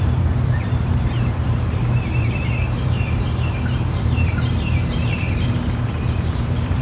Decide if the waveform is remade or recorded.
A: remade